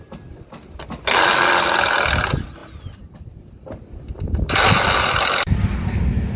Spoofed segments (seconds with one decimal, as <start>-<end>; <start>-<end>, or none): none